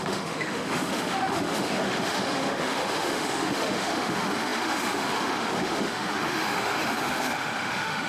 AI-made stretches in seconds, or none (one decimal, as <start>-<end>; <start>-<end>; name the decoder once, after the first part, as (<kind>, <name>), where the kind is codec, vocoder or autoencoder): 0.0-8.1 (autoencoder, DAC-VAE)